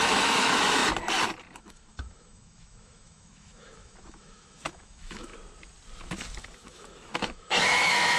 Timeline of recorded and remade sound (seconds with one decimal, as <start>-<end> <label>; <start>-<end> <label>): 0.0-0.8 remade; 0.8-1.6 recorded; 1.6-5.3 remade; 5.3-6.4 recorded; 6.4-8.2 remade